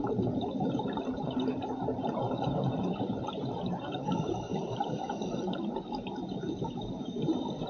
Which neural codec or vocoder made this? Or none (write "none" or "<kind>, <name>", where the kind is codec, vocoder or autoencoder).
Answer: vocoder, BigVGAN v2